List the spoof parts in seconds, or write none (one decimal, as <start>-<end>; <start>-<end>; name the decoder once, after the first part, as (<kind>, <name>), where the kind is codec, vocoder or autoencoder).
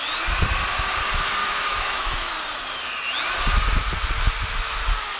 1.4-2.3 (autoencoder, DAC-VAE)